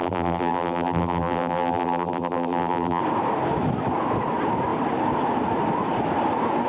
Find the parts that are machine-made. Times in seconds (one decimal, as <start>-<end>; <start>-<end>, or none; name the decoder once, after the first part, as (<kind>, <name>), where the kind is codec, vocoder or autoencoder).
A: 0.0-3.0 (vocoder, BigVGAN v2)